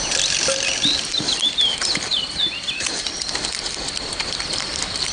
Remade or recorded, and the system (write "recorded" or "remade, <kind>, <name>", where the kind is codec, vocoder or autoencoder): remade, vocoder, BigVGAN v2